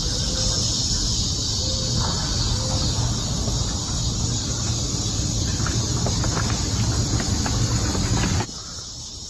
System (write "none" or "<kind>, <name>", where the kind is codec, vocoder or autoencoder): none